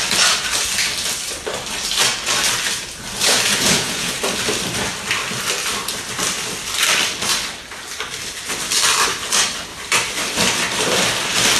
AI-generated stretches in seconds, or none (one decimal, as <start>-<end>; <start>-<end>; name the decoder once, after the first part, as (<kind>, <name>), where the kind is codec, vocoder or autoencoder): 3.2-4.2 (vocoder, Vocos)